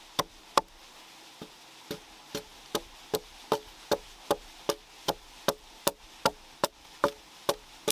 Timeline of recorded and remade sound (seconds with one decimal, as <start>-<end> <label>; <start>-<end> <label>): 0.0-7.9 recorded